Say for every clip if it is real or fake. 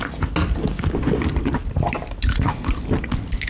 real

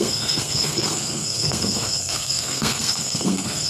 fake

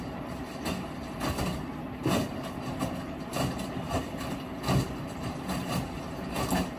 real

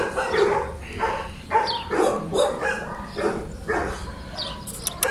real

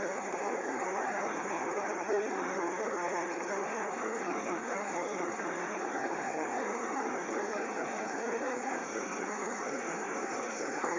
fake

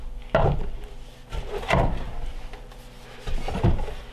real